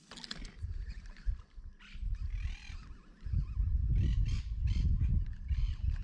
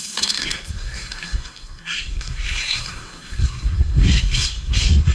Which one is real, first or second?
first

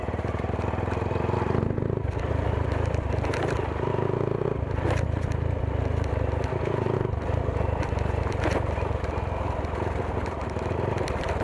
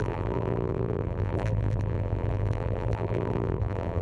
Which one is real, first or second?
first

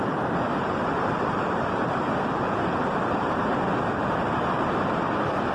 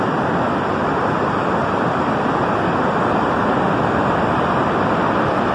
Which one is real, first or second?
second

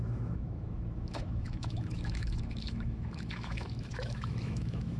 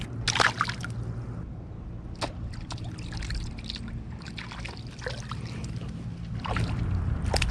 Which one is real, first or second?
second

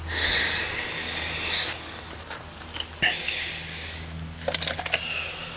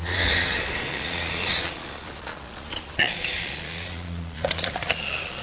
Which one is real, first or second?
first